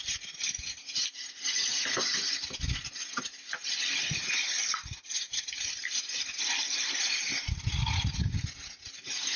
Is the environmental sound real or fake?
real